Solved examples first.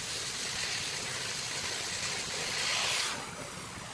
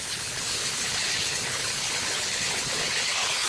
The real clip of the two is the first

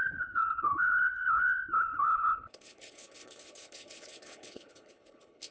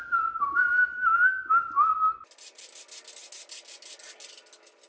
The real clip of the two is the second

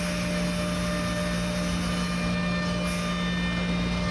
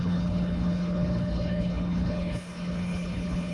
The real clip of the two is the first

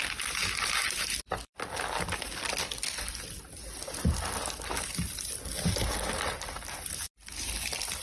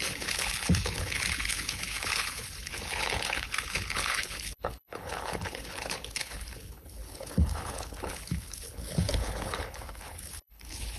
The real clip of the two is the first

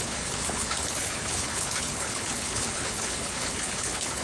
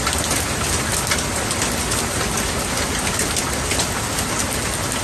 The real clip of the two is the second